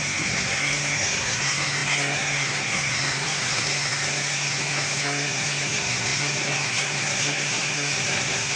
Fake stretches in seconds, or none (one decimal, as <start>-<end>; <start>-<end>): 0.0-8.6